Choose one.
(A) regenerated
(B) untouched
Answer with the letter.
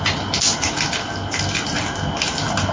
B